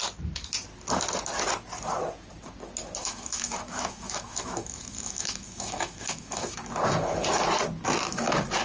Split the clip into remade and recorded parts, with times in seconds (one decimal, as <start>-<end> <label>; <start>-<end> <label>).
0.0-3.0 recorded; 3.0-6.5 remade; 6.5-8.6 recorded